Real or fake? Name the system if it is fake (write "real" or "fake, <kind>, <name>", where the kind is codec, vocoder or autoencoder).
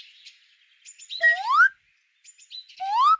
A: real